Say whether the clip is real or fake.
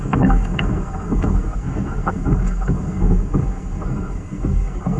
fake